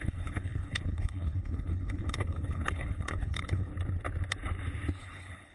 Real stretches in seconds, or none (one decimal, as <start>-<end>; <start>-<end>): 3.7-5.0